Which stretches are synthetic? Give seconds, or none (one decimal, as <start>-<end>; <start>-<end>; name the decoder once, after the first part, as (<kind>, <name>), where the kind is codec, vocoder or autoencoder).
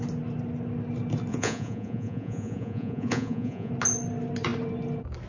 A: 1.3-3.7 (vocoder, Vocos)